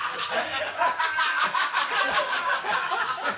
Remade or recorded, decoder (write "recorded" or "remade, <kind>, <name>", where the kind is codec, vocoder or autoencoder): remade, codec, DAC